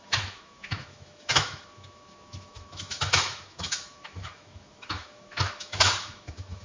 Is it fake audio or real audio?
fake